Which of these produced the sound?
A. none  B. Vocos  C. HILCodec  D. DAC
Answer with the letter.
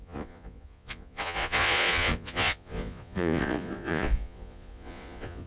B